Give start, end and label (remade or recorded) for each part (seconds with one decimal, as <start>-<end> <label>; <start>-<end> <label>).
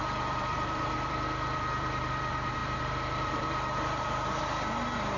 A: 0.0-5.2 remade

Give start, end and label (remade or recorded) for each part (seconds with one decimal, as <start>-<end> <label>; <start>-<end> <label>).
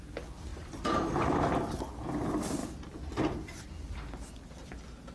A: 0.0-0.5 recorded; 0.5-1.8 remade; 1.8-5.1 recorded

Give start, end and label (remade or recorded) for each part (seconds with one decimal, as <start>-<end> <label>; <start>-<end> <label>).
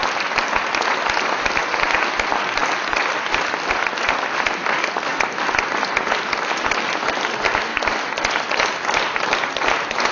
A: 0.0-10.1 recorded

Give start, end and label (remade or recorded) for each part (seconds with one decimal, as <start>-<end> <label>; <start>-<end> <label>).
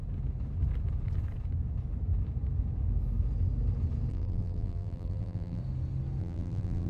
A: 0.0-4.1 recorded; 4.1-5.6 remade; 5.6-6.2 recorded; 6.2-6.9 remade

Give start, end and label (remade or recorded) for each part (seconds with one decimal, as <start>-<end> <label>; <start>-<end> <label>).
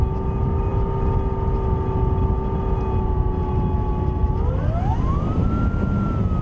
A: 0.0-4.2 recorded; 4.2-5.5 remade; 5.5-6.4 recorded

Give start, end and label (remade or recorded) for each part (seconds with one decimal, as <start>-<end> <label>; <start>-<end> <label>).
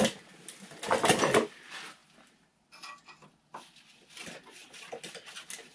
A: 0.0-5.7 recorded